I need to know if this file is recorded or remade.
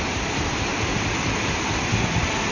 recorded